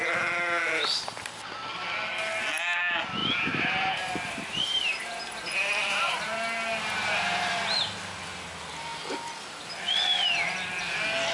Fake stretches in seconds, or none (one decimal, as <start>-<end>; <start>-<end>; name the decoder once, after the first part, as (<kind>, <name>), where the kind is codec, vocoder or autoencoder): 3.2-7.5 (vocoder, BigVGAN v2)